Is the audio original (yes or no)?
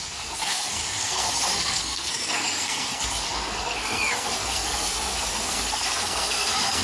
no